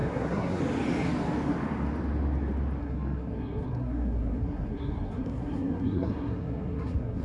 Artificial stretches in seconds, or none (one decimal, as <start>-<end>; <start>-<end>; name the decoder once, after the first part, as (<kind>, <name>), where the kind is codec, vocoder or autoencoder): 0.0-0.6 (codec, SNAC); 2.8-7.2